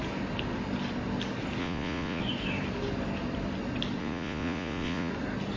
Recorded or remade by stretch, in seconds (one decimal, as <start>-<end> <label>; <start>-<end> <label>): 0.0-1.6 recorded; 1.6-2.2 remade; 2.2-4.0 recorded; 4.0-5.1 remade; 5.1-5.6 recorded